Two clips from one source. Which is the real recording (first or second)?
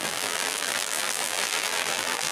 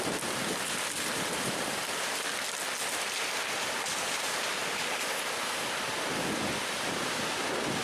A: second